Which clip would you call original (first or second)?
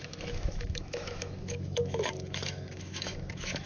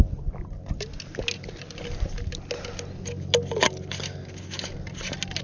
second